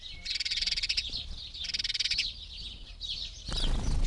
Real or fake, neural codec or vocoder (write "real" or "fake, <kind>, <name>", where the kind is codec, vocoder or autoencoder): real